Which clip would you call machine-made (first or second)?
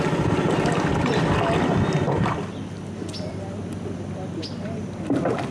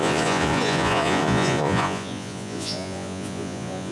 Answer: second